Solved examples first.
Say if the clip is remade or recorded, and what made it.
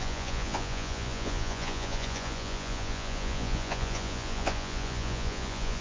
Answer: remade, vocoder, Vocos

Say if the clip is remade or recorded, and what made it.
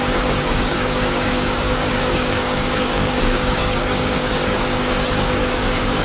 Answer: remade, codec, DAC